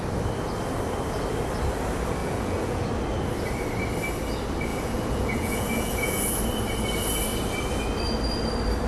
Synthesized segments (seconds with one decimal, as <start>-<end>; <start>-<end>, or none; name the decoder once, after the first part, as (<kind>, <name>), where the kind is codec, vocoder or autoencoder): 2.2-2.8 (vocoder, Vocos); 4.7-6.4